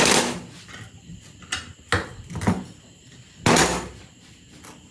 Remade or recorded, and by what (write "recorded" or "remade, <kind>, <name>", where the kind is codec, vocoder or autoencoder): recorded